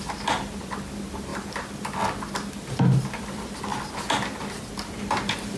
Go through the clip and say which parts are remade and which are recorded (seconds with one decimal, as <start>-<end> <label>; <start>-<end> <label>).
0.0-5.6 recorded